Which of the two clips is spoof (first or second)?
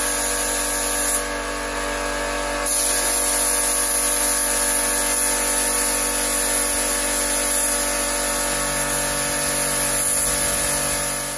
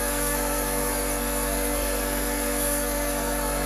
second